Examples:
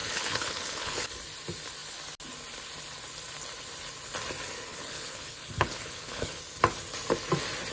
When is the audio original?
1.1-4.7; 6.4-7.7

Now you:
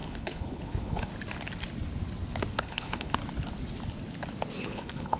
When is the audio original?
1.1-2.5; 3.2-4.6

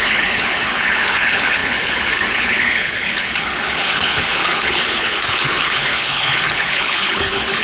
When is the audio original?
none

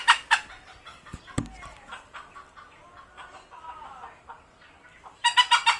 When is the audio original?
0.0-5.8

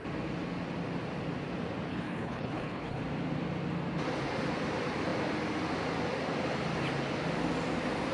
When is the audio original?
0.0-1.9; 3.0-8.1